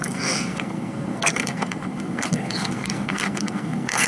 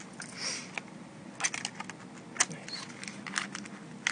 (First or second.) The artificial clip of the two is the first